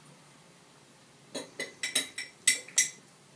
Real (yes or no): yes